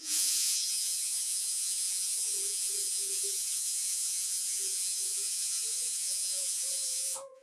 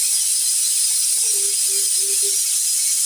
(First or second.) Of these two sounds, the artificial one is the first